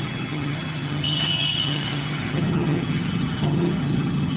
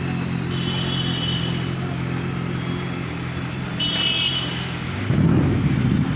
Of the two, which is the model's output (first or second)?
first